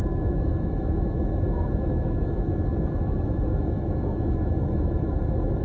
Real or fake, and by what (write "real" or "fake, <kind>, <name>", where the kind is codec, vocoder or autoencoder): fake, autoencoder, DAC-VAE